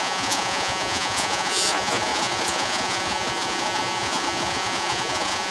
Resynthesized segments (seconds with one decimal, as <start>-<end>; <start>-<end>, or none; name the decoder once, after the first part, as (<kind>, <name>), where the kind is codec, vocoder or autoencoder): 0.0-5.5 (vocoder, Vocos)

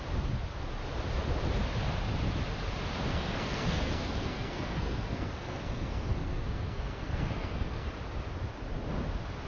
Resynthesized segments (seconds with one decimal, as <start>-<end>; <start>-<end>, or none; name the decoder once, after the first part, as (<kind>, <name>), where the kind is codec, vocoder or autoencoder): 3.1-7.9 (codec, SNAC)